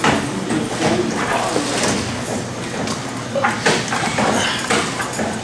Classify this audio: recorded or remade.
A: recorded